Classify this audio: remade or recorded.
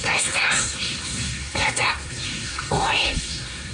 remade